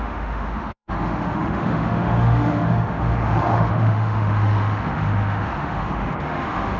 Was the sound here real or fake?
fake